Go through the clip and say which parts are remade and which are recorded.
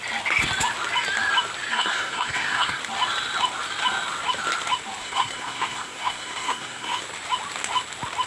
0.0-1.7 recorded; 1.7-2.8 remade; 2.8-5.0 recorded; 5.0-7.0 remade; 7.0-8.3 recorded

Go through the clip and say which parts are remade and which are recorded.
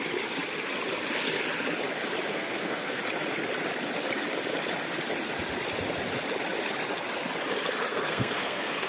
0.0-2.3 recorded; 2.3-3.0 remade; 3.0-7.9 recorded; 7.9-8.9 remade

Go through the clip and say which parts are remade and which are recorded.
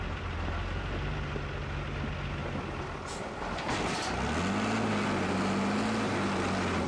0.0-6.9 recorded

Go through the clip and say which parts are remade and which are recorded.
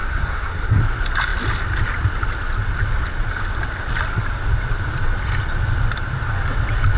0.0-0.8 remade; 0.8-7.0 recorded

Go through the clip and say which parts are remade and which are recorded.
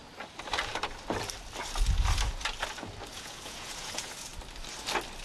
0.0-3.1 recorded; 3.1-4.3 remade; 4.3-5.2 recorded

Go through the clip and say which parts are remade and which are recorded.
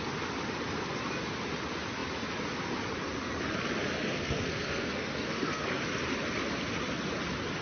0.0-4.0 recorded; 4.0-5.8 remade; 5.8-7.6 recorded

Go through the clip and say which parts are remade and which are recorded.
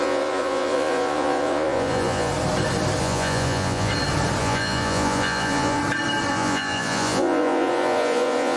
0.0-2.3 remade; 2.3-3.0 recorded; 3.0-3.9 remade; 3.9-4.4 recorded; 4.4-5.8 remade; 5.8-6.3 recorded; 6.3-8.6 remade